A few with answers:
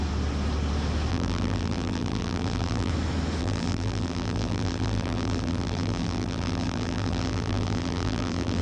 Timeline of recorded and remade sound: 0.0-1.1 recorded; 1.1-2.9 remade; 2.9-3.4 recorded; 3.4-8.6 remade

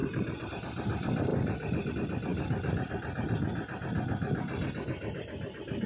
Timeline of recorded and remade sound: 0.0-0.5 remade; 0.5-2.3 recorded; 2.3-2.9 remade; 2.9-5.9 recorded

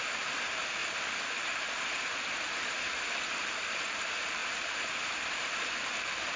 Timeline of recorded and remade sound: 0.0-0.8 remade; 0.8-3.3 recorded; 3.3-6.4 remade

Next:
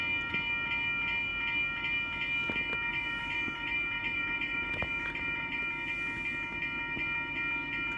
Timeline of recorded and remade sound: 0.0-2.9 recorded; 2.9-5.6 remade; 5.6-8.0 recorded

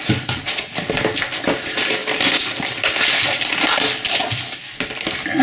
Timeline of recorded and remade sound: 0.0-5.4 recorded

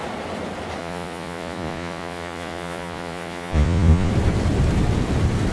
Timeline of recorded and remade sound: 0.0-0.8 recorded; 0.8-4.1 remade; 4.1-5.5 recorded

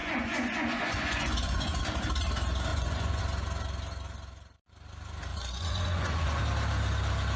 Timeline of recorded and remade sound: 0.0-1.8 remade; 1.8-2.7 recorded; 2.7-3.2 remade; 3.2-5.3 recorded; 5.3-6.4 remade; 6.4-7.4 recorded